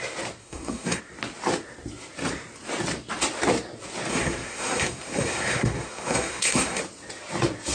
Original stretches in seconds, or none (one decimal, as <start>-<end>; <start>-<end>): 0.0-0.4; 1.0-4.1; 6.8-7.7